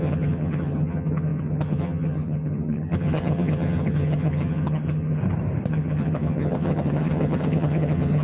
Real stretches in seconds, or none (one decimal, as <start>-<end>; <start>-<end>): 5.2-5.7